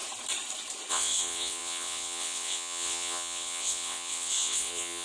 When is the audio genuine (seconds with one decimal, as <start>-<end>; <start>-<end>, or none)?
0.0-0.9